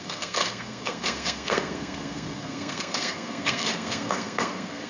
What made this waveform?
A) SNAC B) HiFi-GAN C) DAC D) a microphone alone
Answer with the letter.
A